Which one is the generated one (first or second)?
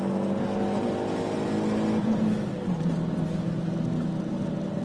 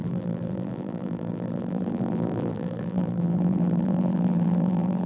second